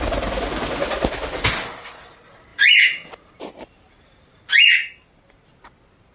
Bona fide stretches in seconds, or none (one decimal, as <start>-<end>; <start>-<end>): 0.0-2.5; 4.4-6.1